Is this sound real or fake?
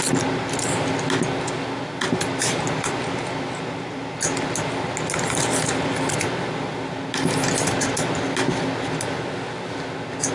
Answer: real